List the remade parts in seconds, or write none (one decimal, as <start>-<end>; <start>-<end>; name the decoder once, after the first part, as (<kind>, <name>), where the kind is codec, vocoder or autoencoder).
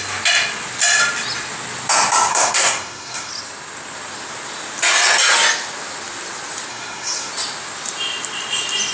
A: 2.3-3.3 (codec, SNAC); 6.7-7.3